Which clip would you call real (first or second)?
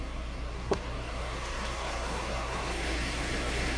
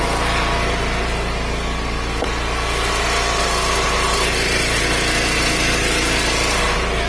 second